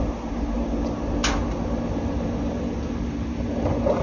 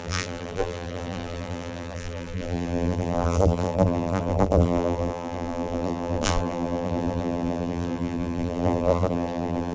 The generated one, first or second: second